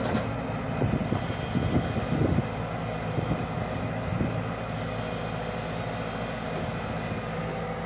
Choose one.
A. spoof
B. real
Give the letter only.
B